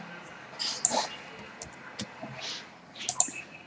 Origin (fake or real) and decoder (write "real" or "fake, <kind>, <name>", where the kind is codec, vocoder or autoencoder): real